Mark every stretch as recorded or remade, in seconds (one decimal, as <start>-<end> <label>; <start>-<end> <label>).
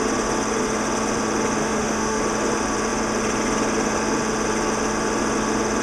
0.0-1.6 recorded; 1.6-2.2 remade; 2.2-5.8 recorded